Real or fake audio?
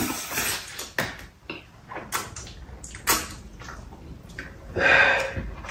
real